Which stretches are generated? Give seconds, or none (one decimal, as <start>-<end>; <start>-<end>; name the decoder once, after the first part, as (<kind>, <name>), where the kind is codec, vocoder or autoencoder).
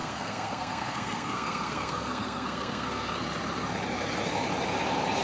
0.0-3.1 (codec, SNAC)